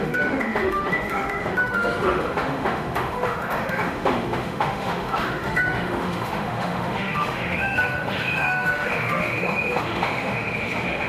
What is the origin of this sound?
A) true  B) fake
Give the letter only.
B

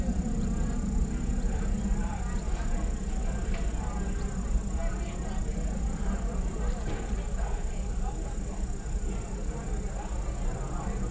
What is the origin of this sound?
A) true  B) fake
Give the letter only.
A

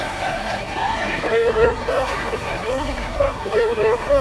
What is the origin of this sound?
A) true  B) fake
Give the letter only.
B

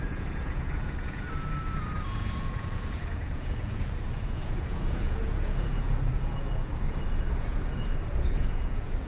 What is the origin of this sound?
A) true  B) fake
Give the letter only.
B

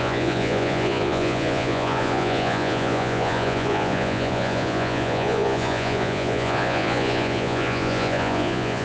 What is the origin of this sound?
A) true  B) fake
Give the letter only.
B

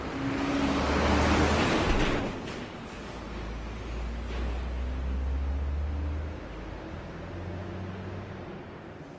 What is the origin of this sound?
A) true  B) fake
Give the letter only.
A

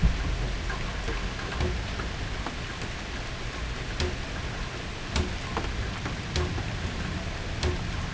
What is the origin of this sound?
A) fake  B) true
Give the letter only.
B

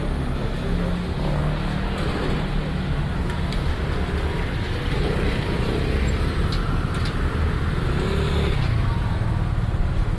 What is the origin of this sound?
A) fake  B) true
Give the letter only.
B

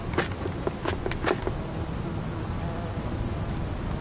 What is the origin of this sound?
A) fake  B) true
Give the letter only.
B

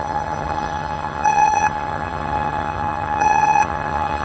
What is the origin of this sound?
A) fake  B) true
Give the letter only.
A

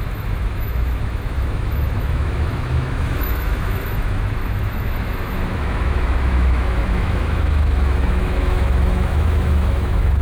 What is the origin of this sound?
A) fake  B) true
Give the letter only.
A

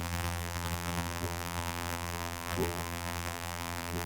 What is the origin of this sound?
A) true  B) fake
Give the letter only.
B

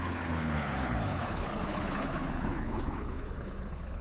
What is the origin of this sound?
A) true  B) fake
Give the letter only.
B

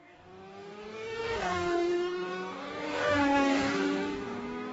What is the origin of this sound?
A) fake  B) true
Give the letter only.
A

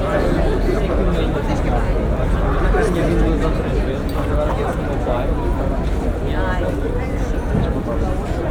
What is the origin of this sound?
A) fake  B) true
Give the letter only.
B